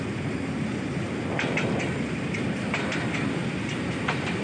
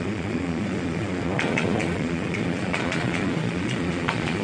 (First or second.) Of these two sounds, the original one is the first